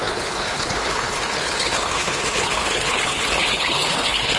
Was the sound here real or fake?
fake